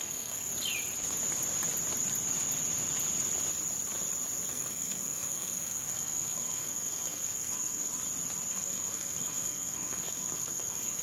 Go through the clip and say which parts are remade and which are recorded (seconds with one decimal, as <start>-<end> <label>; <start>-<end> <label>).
0.0-0.5 remade; 0.5-4.5 recorded; 4.5-7.9 remade; 7.9-8.5 recorded; 8.5-11.0 remade